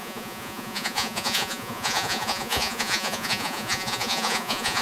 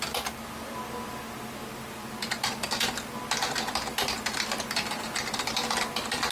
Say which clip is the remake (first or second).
first